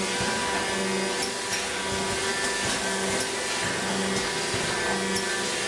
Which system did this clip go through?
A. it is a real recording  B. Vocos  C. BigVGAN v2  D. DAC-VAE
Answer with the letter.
A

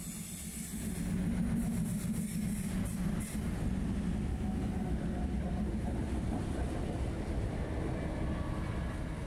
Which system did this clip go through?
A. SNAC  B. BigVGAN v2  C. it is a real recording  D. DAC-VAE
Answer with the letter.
C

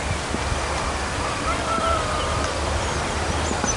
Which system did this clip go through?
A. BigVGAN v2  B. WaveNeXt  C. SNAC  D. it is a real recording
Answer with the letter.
D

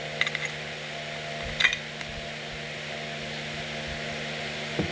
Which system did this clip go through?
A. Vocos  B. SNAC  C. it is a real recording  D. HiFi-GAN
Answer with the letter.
C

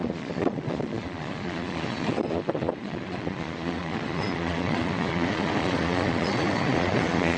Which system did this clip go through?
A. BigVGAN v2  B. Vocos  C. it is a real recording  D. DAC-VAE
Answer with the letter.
B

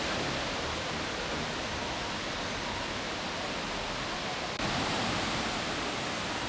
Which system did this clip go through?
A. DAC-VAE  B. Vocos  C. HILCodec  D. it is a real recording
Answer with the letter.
D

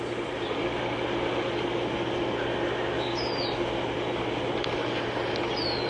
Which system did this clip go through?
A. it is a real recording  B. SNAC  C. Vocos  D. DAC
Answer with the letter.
A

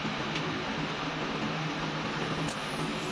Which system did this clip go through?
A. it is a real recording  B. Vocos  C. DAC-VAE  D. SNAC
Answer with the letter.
A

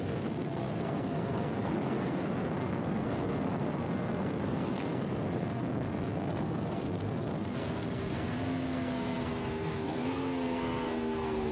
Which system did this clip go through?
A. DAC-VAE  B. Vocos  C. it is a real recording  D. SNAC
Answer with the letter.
D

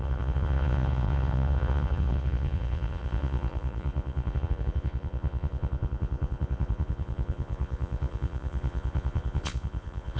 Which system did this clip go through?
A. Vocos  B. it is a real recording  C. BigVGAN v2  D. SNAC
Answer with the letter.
A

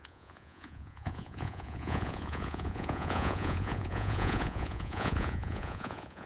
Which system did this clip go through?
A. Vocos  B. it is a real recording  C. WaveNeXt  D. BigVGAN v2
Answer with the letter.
A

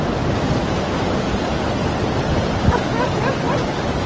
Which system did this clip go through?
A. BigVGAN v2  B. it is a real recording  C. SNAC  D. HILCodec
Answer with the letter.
B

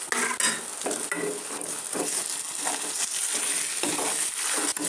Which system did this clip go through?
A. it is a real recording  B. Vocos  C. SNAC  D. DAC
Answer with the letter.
A